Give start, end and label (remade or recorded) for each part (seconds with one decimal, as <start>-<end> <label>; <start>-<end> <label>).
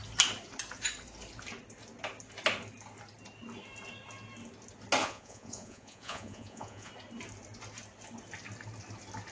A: 0.0-5.0 recorded; 5.0-6.9 remade; 6.9-9.3 recorded